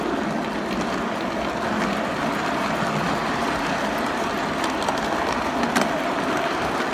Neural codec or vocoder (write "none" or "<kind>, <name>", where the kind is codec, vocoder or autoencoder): none